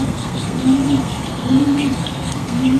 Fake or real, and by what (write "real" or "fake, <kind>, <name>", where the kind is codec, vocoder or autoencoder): fake, codec, SNAC